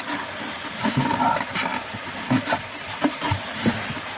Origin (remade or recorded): remade